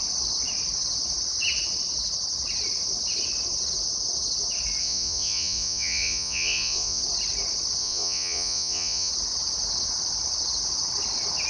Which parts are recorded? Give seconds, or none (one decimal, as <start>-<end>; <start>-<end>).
0.0-4.8; 7.0-7.8; 9.1-11.5